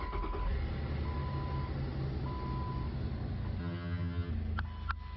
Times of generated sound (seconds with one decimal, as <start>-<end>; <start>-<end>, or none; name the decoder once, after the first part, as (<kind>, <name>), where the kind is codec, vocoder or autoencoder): 3.6-4.3 (vocoder, HiFi-GAN)